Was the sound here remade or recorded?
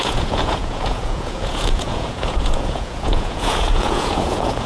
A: remade